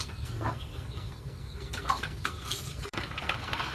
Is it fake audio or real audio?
fake